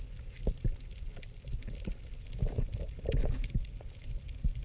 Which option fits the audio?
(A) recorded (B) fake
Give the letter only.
A